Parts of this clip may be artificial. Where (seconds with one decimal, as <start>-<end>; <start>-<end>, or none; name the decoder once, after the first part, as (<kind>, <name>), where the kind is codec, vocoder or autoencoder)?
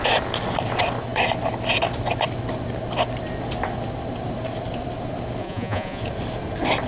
5.4-6.0 (vocoder, Vocos)